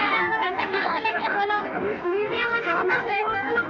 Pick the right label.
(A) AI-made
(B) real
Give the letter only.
A